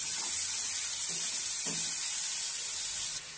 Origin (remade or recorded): recorded